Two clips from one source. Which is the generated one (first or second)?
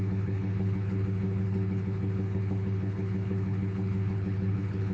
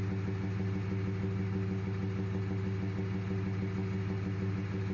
first